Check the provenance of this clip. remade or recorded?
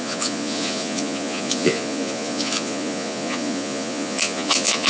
remade